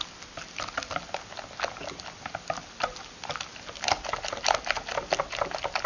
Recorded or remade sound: recorded